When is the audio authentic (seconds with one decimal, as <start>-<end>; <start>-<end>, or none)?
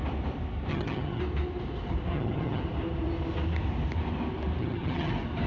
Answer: 0.0-0.7; 1.2-2.1; 2.6-4.6; 5.1-5.5